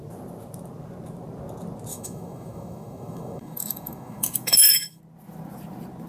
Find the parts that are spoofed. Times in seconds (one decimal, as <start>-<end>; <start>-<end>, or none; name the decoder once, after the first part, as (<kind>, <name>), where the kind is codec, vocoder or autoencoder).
1.9-5.0 (autoencoder, DAC-VAE)